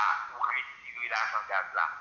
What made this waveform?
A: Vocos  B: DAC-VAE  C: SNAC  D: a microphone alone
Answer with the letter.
D